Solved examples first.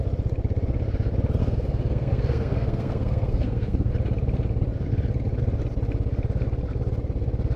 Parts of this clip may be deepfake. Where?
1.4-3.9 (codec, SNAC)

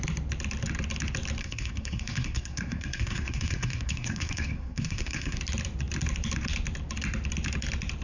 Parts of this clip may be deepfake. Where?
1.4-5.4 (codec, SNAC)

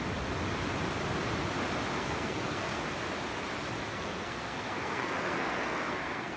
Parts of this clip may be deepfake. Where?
1.9-2.8 (codec, SNAC); 3.9-6.4

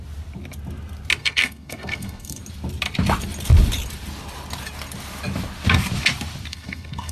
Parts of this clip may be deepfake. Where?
1.2-2.4 (codec, SNAC); 6.5-7.1

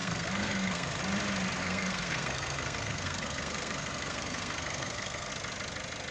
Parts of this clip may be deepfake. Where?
0.0-1.0 (codec, SNAC); 1.6-5.3

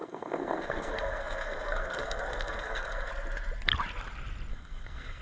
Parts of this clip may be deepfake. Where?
0.0-3.1 (codec, SNAC); 4.5-5.2